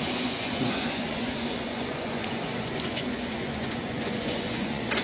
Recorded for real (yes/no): no